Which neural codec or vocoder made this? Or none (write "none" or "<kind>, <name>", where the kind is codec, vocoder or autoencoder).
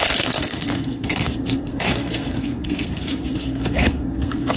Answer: codec, SNAC